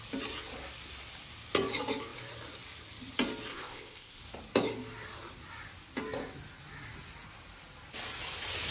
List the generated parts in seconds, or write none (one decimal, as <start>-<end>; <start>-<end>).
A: 3.5-4.2

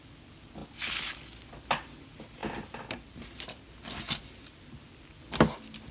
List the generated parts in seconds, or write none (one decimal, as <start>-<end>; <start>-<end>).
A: none

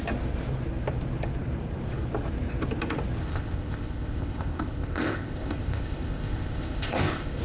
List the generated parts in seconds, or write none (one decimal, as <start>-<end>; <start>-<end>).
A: 3.2-7.4

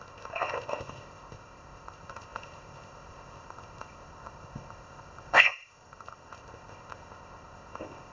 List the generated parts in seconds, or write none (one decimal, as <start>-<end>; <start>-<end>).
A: 0.0-8.1